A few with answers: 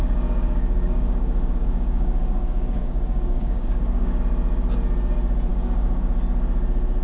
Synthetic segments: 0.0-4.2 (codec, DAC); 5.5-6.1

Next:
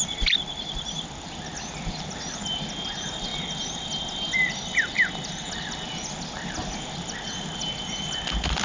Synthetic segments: none

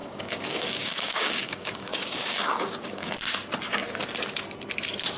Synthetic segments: 0.0-3.1 (codec, DAC)

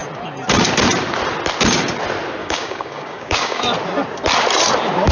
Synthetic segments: 2.4-3.6 (codec, DAC)

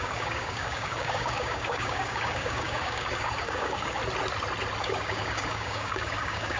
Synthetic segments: 0.0-4.0 (codec, DAC); 4.8-6.6

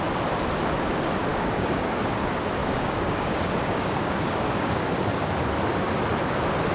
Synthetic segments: 1.3-2.0 (codec, DAC); 2.6-4.9